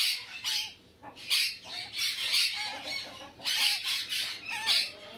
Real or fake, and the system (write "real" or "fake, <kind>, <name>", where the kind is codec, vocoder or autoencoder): real